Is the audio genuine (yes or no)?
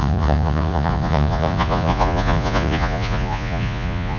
no